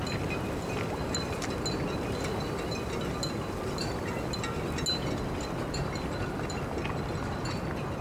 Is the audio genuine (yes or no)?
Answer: yes